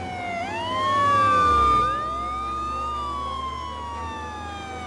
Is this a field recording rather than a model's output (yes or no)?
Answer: yes